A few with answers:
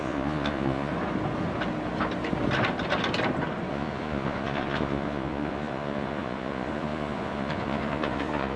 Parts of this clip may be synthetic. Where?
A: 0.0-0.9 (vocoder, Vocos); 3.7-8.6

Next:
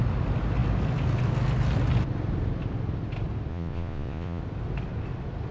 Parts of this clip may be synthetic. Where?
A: 3.5-4.4 (vocoder, Vocos)

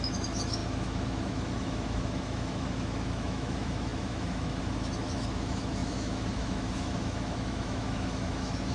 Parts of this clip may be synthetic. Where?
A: 0.0-8.7 (autoencoder, DAC-VAE)

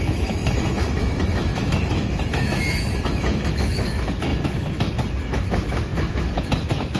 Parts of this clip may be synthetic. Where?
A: 0.0-4.3 (autoencoder, DAC-VAE); 5.2-7.0

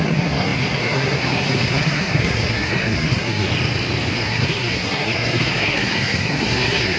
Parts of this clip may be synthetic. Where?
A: 0.0-3.5 (codec, SNAC); 4.1-7.0

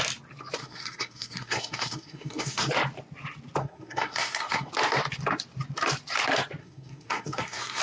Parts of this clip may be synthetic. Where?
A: 0.6-2.7 (codec, SNAC); 3.6-4.7; 6.6-7.8

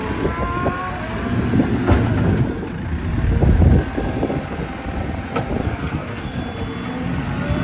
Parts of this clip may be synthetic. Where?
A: 5.6-6.4 (codec, SNAC)